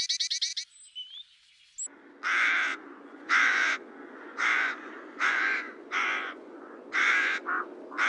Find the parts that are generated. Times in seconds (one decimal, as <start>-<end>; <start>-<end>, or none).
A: 2.7-7.6